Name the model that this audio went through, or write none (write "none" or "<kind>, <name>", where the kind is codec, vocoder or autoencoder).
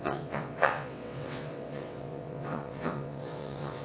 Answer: vocoder, WaveNeXt